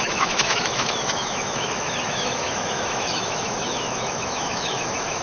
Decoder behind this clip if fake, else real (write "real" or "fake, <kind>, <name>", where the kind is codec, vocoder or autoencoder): fake, autoencoder, DAC-VAE